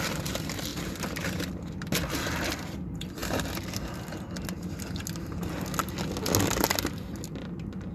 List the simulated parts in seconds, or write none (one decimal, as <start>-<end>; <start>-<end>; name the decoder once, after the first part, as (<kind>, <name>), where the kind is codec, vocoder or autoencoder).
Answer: 0.0-0.7 (vocoder, BigVGAN v2); 1.5-3.2